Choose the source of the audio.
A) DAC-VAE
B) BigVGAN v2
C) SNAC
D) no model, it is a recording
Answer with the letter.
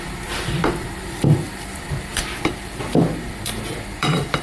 B